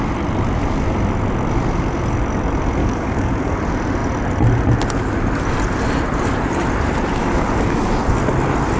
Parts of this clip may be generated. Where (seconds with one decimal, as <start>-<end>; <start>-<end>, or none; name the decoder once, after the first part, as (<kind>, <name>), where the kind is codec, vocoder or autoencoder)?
2.8-3.6 (codec, DAC); 7.2-7.9